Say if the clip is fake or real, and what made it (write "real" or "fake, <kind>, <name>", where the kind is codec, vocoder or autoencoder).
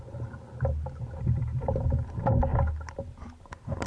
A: real